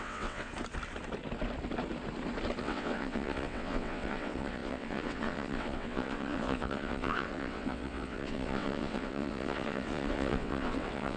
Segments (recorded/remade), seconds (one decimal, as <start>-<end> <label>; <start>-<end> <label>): 0.0-0.5 remade; 0.5-2.6 recorded; 2.6-11.2 remade